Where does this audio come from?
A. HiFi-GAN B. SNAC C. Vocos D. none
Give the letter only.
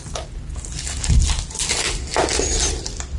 D